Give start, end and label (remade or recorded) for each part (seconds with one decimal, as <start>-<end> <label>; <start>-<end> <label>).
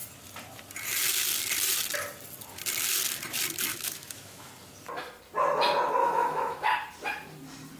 0.0-3.7 recorded; 3.7-4.5 remade; 4.5-6.0 recorded; 6.0-6.7 remade; 6.7-7.8 recorded